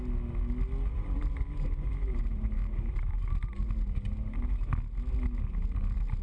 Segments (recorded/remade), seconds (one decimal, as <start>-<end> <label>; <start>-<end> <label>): 0.0-0.9 recorded; 0.9-2.9 remade; 2.9-6.2 recorded